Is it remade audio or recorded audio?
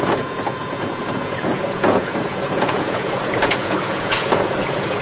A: remade